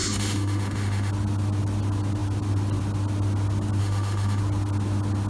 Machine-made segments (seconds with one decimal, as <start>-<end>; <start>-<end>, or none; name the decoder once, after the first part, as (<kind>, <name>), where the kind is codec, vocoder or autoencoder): 0.0-1.1 (autoencoder, DAC-VAE); 3.8-4.4